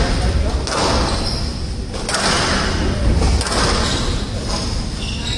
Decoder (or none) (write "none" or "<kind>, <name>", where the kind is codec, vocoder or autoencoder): none